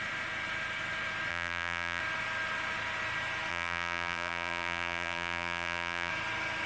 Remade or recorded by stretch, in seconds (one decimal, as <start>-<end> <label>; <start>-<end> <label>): 0.0-1.3 recorded; 1.3-2.0 remade; 2.0-3.5 recorded; 3.5-6.1 remade; 6.1-6.7 recorded